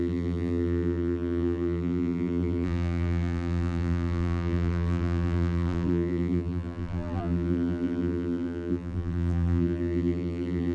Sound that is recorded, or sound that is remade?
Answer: remade